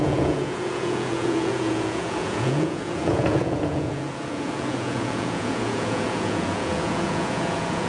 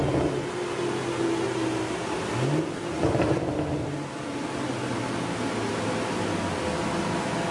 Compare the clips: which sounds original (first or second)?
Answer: second